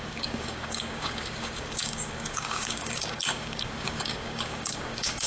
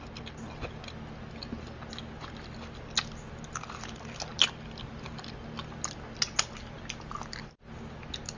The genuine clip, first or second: second